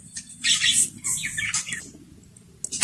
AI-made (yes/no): no